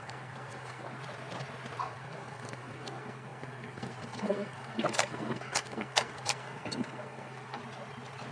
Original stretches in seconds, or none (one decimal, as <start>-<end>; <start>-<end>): 1.0-1.8; 7.6-8.3